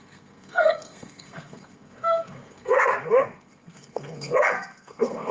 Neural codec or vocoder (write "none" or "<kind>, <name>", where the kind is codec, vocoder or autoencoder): codec, SNAC